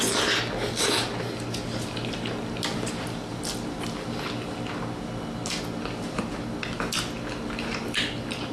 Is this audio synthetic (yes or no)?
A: no